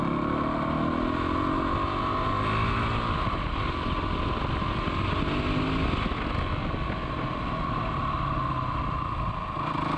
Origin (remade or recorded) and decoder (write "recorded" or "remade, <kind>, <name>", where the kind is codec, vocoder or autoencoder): recorded